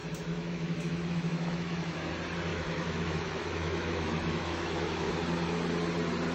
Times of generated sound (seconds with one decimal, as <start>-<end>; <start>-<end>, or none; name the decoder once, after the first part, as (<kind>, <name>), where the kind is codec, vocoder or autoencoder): 0.0-2.1 (autoencoder, DAC-VAE); 2.5-5.1